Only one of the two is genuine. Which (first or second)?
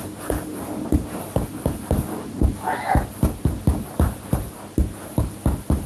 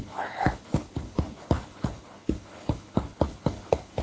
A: first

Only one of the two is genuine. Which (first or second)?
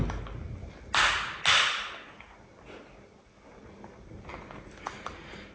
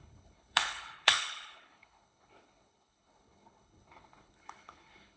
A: first